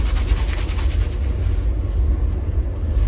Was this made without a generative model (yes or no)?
yes